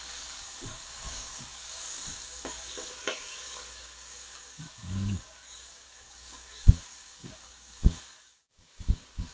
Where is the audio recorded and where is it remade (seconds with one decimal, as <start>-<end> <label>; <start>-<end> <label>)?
0.0-9.3 remade